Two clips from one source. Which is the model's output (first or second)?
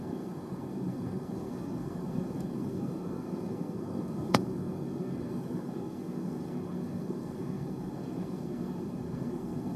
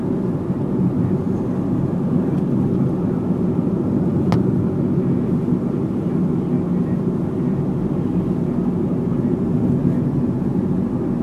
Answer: first